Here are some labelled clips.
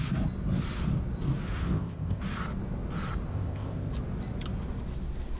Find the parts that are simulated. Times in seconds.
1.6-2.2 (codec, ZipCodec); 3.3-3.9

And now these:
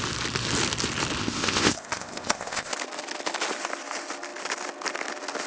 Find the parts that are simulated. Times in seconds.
1.2-2.7 (codec, ZipCodec)

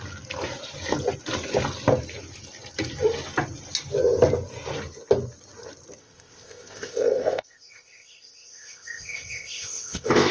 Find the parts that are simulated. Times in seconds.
6.0-10.3 (codec, ZipCodec)

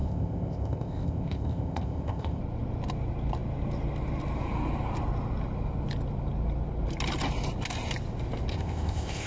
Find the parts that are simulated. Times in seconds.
0.0-2.4 (codec, ZipCodec); 8.5-9.3

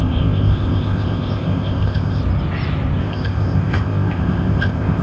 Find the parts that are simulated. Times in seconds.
0.0-2.2 (codec, ZipCodec); 3.0-5.0

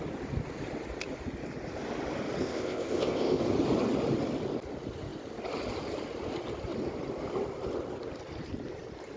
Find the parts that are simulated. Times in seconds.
2.4-3.4 (codec, ZipCodec)

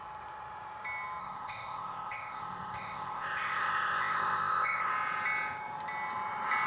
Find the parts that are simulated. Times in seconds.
1.2-4.9 (codec, ZipCodec)